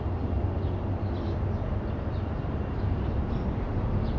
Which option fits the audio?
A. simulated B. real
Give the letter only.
B